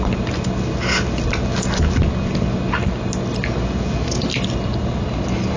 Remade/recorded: recorded